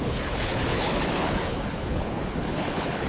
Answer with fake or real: fake